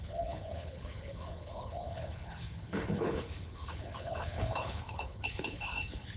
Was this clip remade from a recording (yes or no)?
yes